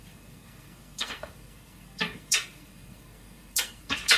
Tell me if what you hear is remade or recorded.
remade